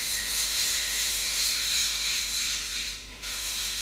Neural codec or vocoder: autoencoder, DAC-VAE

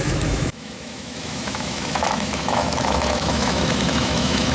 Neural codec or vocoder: autoencoder, DAC-VAE